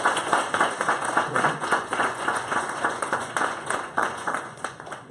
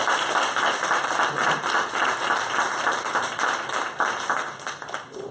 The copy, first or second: first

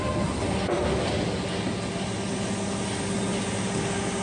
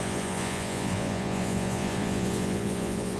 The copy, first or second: second